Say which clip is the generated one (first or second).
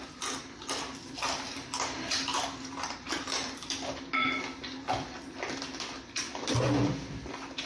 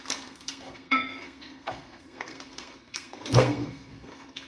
second